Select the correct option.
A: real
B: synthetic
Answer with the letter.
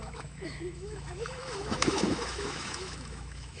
B